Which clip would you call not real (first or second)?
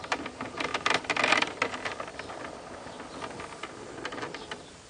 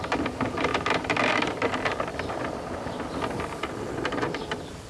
second